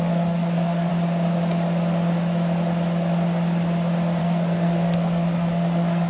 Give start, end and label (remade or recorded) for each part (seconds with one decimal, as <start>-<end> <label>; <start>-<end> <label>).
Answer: 0.0-0.9 remade; 0.9-4.2 recorded; 4.2-6.1 remade

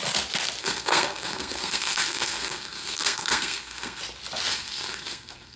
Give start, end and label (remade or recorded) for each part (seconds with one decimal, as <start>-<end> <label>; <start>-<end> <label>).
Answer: 0.0-0.6 recorded; 0.6-4.0 remade; 4.0-4.5 recorded; 4.5-5.6 remade

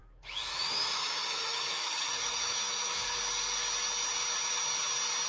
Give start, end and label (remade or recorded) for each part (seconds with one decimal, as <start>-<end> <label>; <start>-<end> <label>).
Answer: 0.0-3.2 remade; 3.2-5.3 recorded

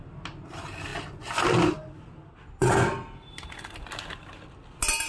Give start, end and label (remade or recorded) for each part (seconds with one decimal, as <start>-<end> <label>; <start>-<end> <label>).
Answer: 0.0-5.1 recorded

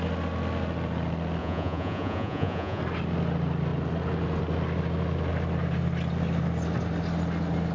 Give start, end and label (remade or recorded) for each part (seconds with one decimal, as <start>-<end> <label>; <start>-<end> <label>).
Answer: 0.0-1.4 recorded; 1.4-2.8 remade; 2.8-7.7 recorded

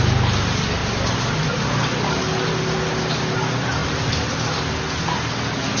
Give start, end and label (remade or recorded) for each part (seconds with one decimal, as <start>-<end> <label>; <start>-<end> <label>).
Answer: 0.0-5.8 recorded